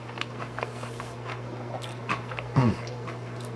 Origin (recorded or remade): remade